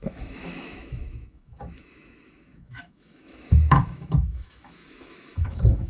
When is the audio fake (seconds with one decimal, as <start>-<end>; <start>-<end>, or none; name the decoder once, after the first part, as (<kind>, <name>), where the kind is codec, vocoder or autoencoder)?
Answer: 0.0-5.9 (autoencoder, DAC-VAE)